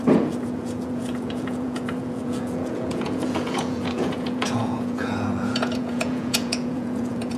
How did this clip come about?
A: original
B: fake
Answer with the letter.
B